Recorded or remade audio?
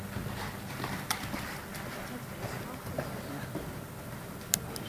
remade